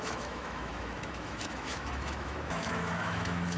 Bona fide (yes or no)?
no